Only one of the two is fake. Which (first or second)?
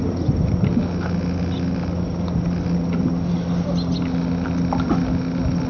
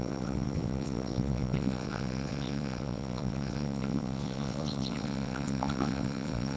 second